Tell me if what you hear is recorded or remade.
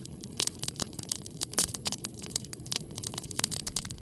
remade